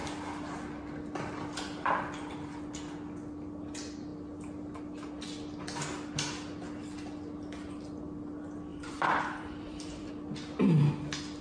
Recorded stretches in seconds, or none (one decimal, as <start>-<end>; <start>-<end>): 0.0-8.7; 10.1-11.4